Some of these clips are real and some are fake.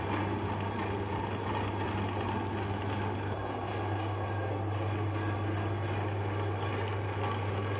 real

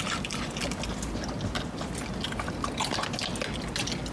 real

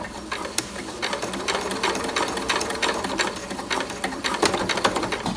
real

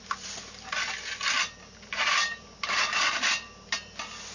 real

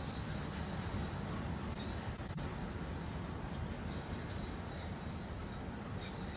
real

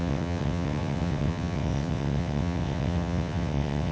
fake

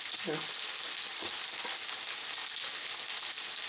real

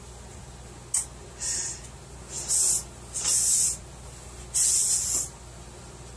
real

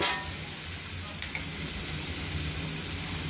real